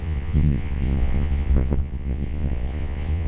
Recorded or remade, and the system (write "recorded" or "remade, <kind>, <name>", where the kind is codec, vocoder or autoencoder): remade, vocoder, Vocos